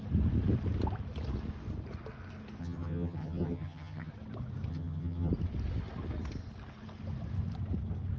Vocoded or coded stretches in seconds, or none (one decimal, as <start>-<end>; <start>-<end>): 2.6-4.1; 4.7-5.3